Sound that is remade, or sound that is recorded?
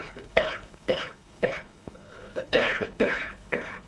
remade